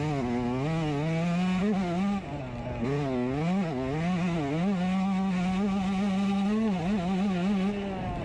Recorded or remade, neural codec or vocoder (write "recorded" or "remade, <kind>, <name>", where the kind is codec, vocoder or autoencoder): recorded